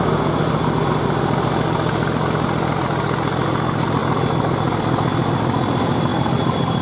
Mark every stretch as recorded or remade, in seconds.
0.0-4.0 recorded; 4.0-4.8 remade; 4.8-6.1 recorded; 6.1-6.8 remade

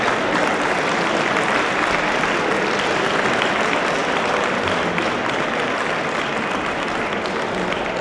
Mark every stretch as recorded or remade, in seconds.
0.0-8.0 recorded

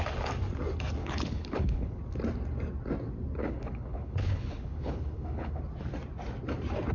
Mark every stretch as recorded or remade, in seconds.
0.0-1.0 recorded; 1.0-2.0 remade; 2.0-3.4 recorded; 3.4-5.6 remade; 5.6-6.9 recorded

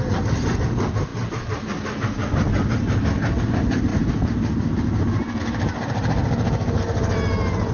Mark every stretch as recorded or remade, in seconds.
0.0-7.7 recorded

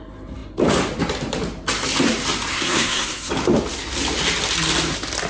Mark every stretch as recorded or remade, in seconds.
0.0-2.5 recorded; 2.5-3.3 remade; 3.3-5.3 recorded

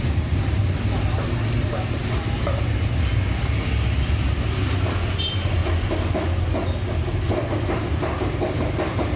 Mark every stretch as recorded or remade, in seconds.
0.0-5.6 remade; 5.6-7.8 recorded; 7.8-9.2 remade